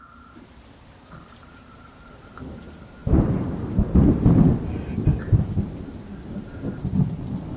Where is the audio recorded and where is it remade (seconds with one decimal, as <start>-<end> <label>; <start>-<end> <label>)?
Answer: 0.0-4.5 remade; 4.5-5.2 recorded; 5.2-6.1 remade; 6.1-6.8 recorded; 6.8-7.6 remade